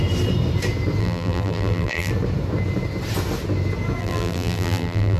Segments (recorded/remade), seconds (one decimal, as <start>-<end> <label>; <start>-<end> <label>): 0.0-1.0 recorded; 1.0-2.1 remade; 2.1-4.0 recorded; 4.0-5.2 remade